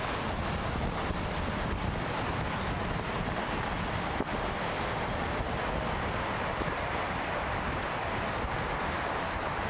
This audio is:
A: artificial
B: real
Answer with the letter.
B